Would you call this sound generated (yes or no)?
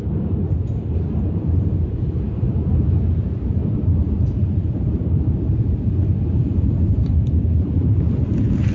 yes